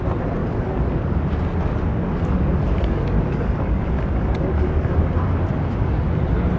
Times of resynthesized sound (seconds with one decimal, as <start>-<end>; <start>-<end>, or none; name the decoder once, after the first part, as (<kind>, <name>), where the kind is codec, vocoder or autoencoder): 0.4-1.3 (codec, DAC); 1.9-5.1